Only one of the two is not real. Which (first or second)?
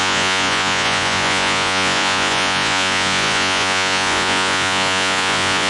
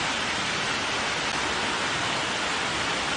first